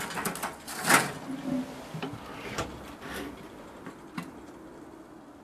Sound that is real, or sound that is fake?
real